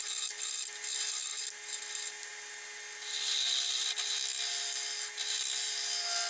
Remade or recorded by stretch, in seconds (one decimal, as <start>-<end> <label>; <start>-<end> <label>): 0.0-6.3 recorded